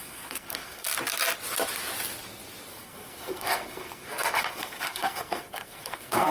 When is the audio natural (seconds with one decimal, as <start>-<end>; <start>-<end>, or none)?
0.9-2.7